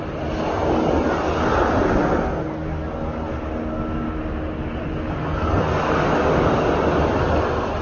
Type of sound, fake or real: real